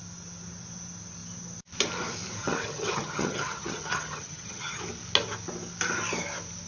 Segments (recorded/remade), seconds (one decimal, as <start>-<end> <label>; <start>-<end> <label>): 0.0-2.4 recorded; 2.4-4.8 remade; 4.8-6.7 recorded